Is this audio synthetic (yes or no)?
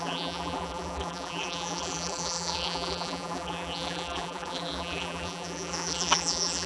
yes